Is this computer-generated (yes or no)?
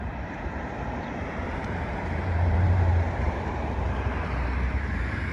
yes